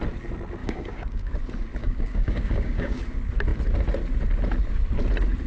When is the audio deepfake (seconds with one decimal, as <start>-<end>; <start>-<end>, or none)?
0.6-1.3; 1.8-3.0